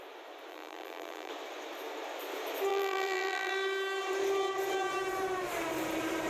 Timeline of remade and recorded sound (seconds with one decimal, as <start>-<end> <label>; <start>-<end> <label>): 0.0-0.5 recorded; 0.5-1.3 remade; 1.3-2.7 recorded; 2.7-3.5 remade; 3.5-6.3 recorded